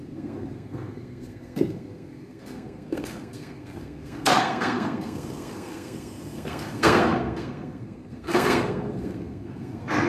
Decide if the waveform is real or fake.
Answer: fake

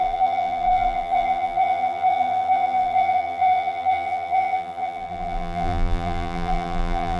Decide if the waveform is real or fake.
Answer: fake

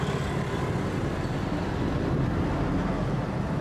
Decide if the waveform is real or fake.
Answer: real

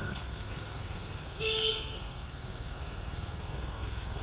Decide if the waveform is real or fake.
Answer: fake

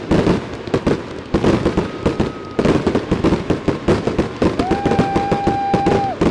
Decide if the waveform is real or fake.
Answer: real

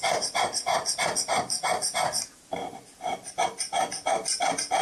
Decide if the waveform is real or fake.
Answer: real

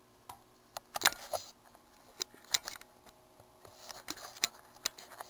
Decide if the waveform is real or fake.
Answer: real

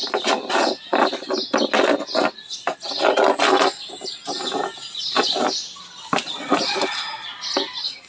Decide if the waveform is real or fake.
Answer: real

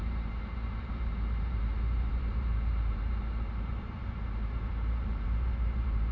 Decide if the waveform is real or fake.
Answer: fake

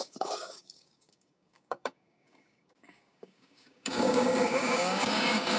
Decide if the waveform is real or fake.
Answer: fake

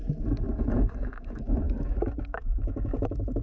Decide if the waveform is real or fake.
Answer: fake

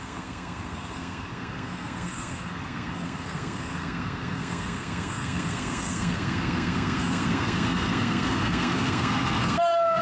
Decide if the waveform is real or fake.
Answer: fake